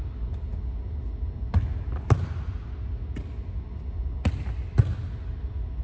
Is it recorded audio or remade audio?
recorded